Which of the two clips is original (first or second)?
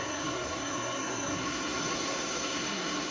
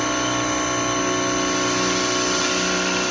second